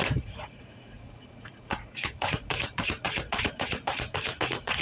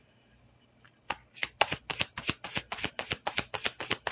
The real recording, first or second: second